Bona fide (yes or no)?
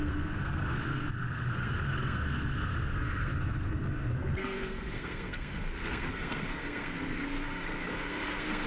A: no